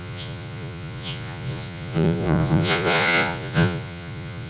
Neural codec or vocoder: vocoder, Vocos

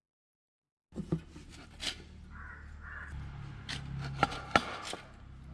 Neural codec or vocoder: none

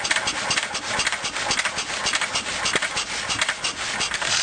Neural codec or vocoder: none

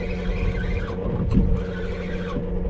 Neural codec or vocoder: none